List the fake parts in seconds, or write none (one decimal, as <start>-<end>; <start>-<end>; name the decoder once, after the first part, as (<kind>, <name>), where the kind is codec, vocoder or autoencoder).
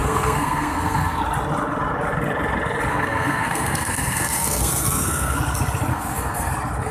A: 0.0-1.2 (codec, SNAC); 2.9-5.4; 5.9-6.5